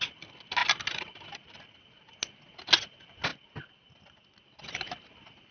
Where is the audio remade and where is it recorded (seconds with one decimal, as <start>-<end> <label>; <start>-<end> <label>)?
0.0-5.5 recorded